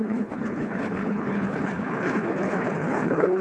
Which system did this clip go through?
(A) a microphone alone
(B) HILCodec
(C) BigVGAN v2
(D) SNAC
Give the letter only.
B